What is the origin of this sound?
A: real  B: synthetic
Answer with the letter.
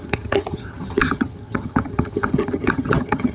B